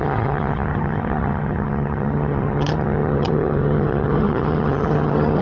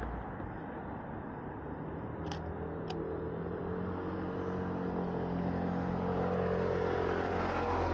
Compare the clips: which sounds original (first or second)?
second